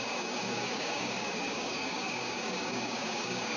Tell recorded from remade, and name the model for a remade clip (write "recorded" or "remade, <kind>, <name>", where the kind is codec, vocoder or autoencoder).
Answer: remade, codec, DAC